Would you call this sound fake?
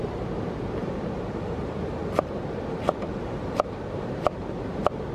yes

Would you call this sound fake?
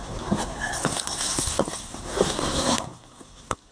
yes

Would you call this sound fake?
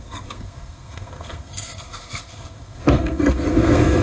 yes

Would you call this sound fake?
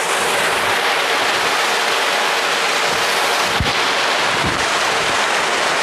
no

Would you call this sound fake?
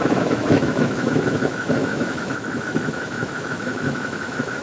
yes